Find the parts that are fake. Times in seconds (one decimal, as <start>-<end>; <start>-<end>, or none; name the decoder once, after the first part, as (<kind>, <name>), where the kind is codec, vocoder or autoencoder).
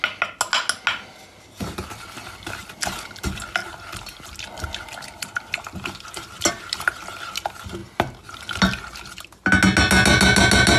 none